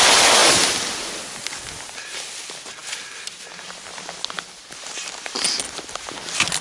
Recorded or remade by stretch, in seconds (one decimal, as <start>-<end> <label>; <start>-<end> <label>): 0.0-6.6 recorded